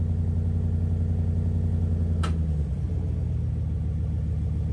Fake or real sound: real